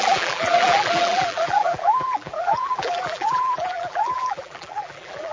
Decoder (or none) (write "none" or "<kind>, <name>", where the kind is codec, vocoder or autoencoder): vocoder, BigVGAN v2